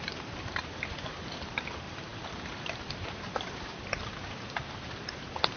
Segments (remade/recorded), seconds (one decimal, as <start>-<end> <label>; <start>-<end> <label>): 0.0-5.6 remade